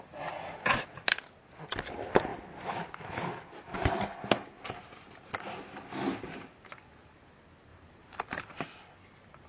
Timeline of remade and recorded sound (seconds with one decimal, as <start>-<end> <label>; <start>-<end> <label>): 0.0-7.7 recorded; 7.7-8.6 remade; 8.6-9.5 recorded